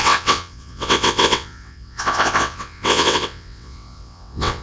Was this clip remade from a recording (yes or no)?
yes